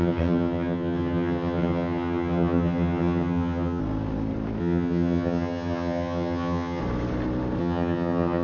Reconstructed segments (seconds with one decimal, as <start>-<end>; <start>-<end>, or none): 0.0-3.8; 4.6-6.8; 7.6-8.4